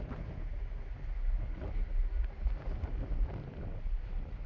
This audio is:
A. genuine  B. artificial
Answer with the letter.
A